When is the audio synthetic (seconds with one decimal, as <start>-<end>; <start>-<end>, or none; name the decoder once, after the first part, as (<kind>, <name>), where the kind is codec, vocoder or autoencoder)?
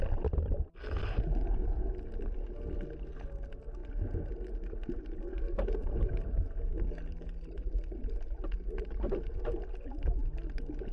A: none